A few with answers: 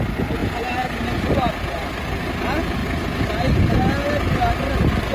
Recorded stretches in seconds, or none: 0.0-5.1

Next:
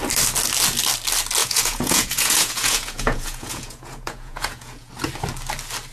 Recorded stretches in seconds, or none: 0.0-1.4; 4.9-5.9

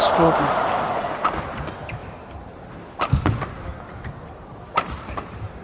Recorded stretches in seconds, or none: 0.0-2.0

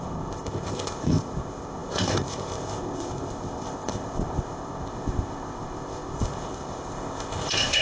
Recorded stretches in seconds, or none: none

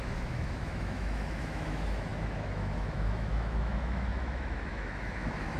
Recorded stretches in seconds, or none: none

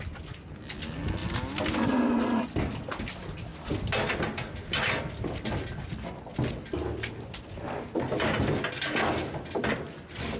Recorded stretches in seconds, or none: 0.0-10.4